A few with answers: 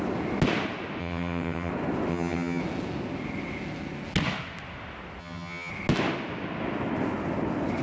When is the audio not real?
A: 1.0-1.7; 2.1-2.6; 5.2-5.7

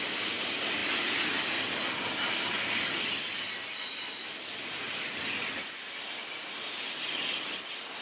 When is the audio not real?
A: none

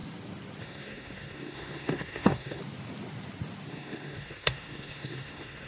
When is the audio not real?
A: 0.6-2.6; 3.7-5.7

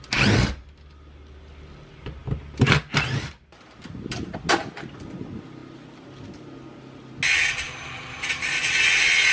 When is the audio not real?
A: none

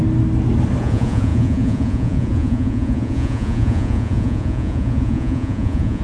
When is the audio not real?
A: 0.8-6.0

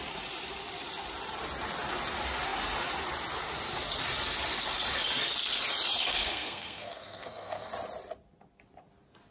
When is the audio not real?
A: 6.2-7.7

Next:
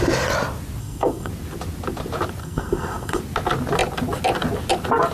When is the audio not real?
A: 0.8-1.3; 2.4-3.2